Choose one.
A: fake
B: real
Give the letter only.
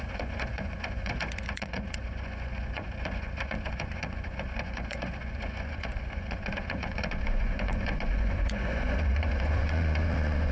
A